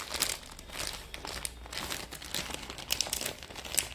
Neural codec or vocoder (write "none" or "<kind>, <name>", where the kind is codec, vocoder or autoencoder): none